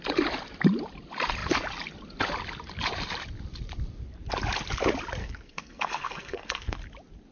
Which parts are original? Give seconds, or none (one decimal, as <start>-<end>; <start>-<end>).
0.0-5.2; 6.8-7.3